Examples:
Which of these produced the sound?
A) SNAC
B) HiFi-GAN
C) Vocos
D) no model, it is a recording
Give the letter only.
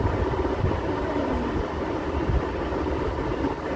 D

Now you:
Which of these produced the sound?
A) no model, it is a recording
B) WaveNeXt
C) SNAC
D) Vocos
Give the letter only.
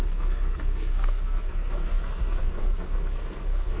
C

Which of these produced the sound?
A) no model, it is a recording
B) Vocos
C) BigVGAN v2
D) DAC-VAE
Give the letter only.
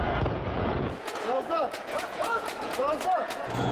B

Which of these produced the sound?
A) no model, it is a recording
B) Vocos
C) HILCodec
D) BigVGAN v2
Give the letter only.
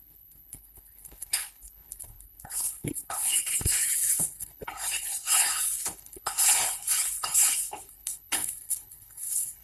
C